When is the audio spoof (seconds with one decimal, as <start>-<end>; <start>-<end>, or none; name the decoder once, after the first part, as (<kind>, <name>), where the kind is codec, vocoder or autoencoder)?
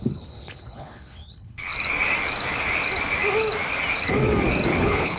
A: 0.0-1.7 (codec, HILCodec); 4.8-5.2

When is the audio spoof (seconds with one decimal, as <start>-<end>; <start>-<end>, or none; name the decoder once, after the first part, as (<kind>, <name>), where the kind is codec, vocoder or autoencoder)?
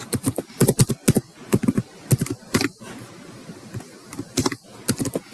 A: none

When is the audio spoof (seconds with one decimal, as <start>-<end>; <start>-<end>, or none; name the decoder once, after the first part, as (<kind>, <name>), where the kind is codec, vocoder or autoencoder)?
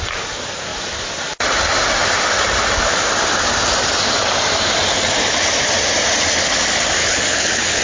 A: 7.0-7.8 (codec, HILCodec)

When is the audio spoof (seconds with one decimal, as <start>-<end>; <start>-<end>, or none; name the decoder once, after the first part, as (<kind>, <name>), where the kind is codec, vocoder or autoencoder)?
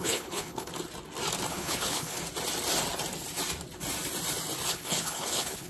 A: 0.0-0.7 (codec, HILCodec); 1.5-2.2; 4.7-5.7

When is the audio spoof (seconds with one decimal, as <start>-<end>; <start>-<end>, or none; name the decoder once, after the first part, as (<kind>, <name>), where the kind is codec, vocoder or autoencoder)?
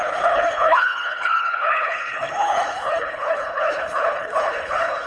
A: 0.0-5.1 (codec, HILCodec)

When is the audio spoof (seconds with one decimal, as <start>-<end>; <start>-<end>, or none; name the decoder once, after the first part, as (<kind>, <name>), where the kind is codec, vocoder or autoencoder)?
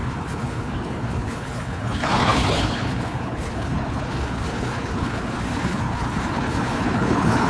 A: 0.0-7.5 (codec, HILCodec)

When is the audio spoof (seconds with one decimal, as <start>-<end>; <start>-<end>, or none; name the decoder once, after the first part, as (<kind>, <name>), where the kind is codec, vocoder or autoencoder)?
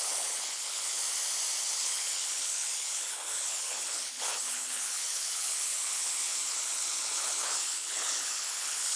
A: 0.0-1.0 (codec, HILCodec); 1.6-9.0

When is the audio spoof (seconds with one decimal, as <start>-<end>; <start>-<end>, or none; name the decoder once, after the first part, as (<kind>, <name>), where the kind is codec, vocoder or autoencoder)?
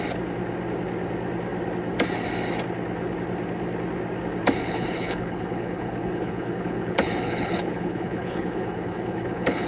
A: 4.6-9.7 (codec, HILCodec)